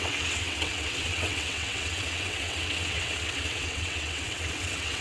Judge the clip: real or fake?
fake